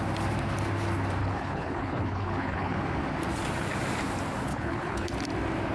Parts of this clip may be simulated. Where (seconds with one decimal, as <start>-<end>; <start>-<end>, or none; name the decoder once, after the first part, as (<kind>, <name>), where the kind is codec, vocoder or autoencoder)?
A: 1.2-2.8 (codec, HILCodec); 4.5-5.1